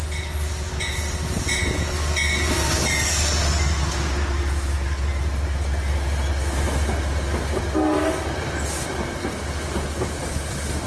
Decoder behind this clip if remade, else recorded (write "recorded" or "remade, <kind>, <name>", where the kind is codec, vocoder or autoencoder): recorded